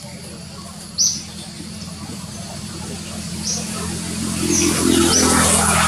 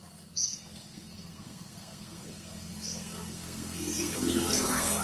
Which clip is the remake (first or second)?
second